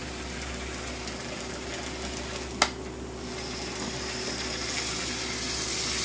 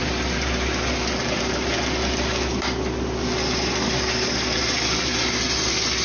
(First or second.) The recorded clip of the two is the first